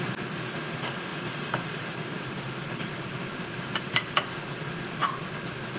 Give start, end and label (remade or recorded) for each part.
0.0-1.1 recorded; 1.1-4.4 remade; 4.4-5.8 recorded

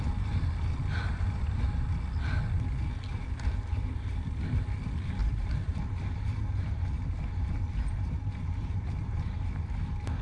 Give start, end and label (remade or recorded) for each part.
0.0-3.1 recorded; 3.1-4.1 remade; 4.1-5.2 recorded; 5.2-9.4 remade; 9.4-10.2 recorded

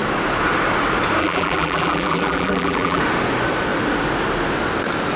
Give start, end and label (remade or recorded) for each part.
0.0-1.2 recorded; 1.2-3.0 remade; 3.0-5.2 recorded

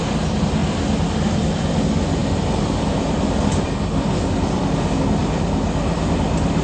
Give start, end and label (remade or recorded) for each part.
0.0-0.6 recorded; 0.6-1.5 remade; 1.5-2.2 recorded; 2.2-4.6 remade; 4.6-5.2 recorded; 5.2-6.6 remade

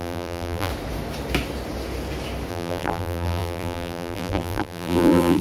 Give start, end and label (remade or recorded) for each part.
0.0-0.7 remade; 0.7-2.5 recorded; 2.5-5.4 remade

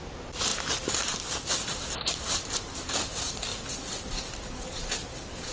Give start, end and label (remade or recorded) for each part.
0.0-0.5 remade; 0.5-1.6 recorded; 1.6-3.5 remade; 3.5-4.6 recorded; 4.6-5.5 remade